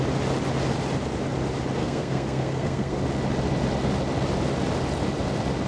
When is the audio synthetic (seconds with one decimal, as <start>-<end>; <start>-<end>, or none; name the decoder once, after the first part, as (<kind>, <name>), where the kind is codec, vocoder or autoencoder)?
1.8-3.0 (codec, SNAC)